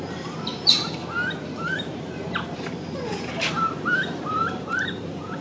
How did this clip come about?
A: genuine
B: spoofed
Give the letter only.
B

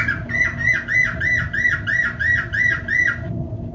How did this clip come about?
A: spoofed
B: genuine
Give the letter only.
B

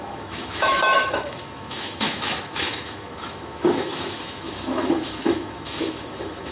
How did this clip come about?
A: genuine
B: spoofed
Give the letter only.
B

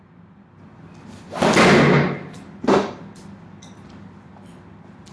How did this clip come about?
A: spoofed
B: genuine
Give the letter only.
B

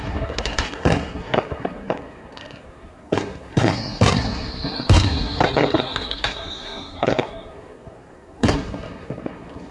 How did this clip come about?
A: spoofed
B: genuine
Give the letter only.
A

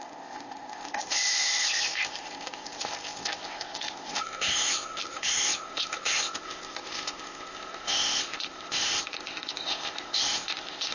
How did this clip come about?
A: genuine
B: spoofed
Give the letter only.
B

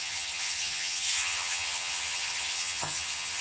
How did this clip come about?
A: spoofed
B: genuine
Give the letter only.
A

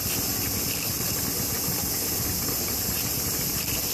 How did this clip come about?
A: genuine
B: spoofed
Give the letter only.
A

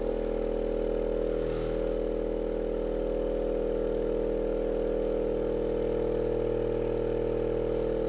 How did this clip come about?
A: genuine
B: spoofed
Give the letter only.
A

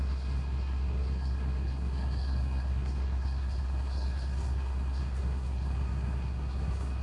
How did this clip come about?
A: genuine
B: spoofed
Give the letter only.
B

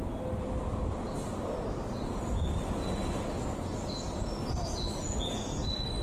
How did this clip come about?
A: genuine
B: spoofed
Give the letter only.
A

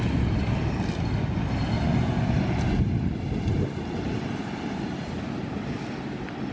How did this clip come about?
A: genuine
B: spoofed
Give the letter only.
A